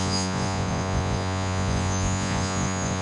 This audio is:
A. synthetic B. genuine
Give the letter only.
A